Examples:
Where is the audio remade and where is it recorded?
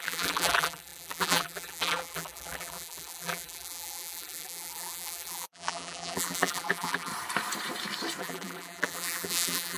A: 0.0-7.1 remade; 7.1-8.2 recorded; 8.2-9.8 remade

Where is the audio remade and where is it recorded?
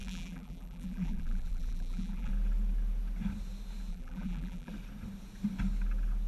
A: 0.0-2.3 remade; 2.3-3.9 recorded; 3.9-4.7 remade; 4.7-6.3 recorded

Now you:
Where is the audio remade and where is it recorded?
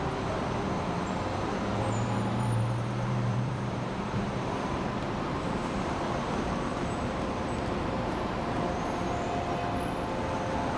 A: 0.0-9.0 remade; 9.0-10.4 recorded; 10.4-10.8 remade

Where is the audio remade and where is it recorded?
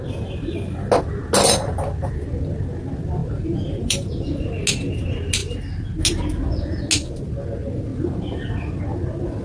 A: 0.0-3.2 recorded; 3.2-4.5 remade; 4.5-5.4 recorded; 5.4-6.0 remade; 6.0-7.9 recorded; 7.9-8.8 remade; 8.8-9.4 recorded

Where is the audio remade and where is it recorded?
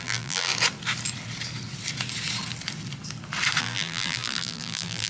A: 0.0-0.5 remade; 0.5-3.6 recorded; 3.6-5.1 remade